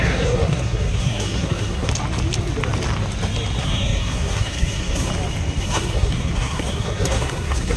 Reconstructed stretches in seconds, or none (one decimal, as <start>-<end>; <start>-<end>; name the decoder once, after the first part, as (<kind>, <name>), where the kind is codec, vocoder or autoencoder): 0.0-1.9 (codec, SNAC); 3.6-5.1; 5.6-7.8